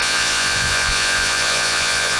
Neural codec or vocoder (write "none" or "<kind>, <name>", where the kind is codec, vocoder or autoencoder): vocoder, Vocos